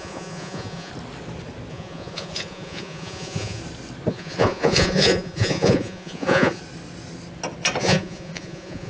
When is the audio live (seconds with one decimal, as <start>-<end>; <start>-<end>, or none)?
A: 0.9-1.7; 3.6-4.1; 6.6-7.8